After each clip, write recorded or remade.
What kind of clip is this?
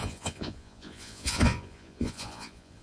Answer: remade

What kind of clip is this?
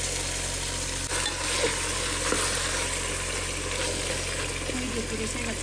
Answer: recorded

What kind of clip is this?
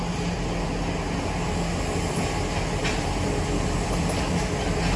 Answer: recorded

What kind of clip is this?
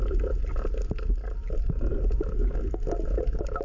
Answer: recorded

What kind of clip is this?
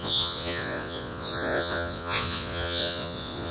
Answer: remade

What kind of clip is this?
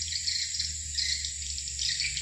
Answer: recorded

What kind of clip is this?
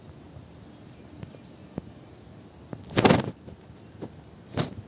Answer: recorded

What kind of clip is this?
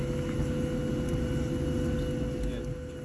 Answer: recorded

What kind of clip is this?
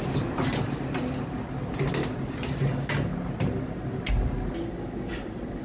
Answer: recorded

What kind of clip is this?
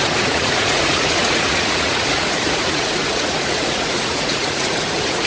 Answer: remade